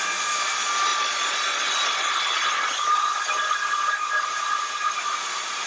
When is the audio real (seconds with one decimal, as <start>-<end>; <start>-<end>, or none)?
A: 0.0-5.7